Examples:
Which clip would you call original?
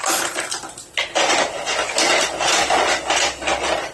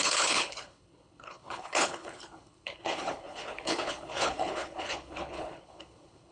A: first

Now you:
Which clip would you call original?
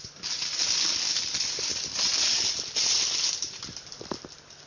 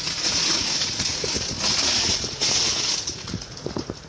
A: first